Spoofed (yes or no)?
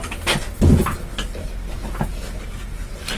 no